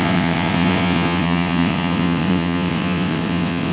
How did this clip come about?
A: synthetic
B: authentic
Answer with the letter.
A